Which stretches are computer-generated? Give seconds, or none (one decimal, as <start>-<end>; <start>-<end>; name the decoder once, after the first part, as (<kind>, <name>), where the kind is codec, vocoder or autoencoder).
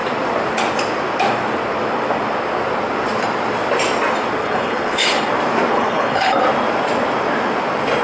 4.4-5.3 (codec, HILCodec); 5.7-6.4